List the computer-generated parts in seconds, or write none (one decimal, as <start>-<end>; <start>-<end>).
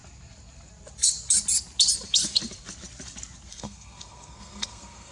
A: 3.5-5.1